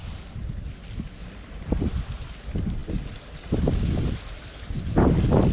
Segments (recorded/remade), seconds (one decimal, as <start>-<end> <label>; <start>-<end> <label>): 0.0-1.2 recorded; 1.2-1.7 remade; 1.7-5.5 recorded